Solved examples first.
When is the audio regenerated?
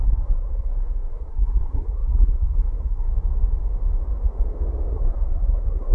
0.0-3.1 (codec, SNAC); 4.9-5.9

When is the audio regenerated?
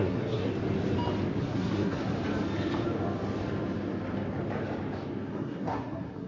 0.0-0.5 (codec, SNAC); 1.4-2.1; 5.3-6.3